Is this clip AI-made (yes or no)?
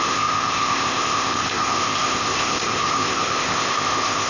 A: yes